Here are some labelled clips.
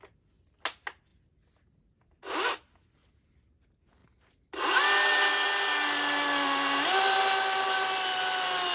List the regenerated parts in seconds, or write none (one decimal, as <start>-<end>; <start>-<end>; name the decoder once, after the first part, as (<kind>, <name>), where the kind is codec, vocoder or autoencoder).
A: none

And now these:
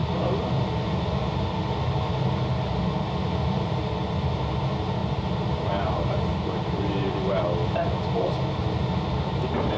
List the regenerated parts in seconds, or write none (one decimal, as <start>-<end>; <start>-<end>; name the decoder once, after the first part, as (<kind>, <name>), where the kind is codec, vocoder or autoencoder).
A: 5.0-7.4 (vocoder, BigVGAN v2)

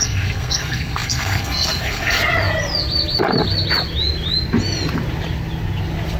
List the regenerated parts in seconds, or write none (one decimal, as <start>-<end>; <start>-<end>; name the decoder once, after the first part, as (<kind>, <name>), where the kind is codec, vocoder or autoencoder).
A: 0.0-2.2 (codec, SNAC)

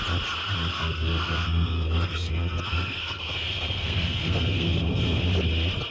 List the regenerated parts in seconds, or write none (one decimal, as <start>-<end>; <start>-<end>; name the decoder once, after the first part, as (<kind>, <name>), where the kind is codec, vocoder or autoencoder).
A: 0.7-2.3 (codec, SNAC); 2.7-5.2

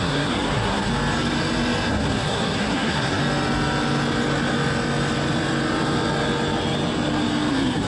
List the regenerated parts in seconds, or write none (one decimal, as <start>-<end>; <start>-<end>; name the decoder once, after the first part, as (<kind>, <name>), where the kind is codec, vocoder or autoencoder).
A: 0.0-0.9 (codec, SNAC); 1.9-3.2; 7.5-7.9

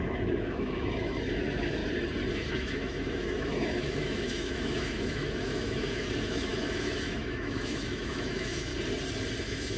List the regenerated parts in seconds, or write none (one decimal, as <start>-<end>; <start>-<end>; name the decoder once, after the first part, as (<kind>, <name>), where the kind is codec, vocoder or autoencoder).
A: 0.0-1.8 (autoencoder, DAC-VAE); 2.3-8.7; 9.4-9.8

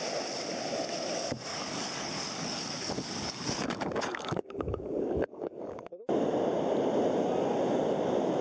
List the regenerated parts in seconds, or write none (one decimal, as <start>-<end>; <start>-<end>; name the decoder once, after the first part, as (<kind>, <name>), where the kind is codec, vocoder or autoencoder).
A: 1.5-5.9 (codec, DAC)

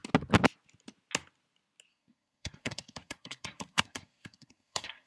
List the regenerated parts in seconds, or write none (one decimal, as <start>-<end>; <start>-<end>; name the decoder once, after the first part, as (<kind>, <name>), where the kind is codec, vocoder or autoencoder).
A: 1.9-5.1 (codec, SNAC)